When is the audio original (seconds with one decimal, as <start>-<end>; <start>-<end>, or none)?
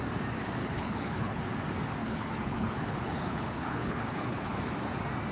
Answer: 0.0-0.6; 1.4-2.0; 4.6-5.3